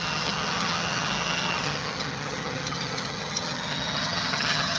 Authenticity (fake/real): fake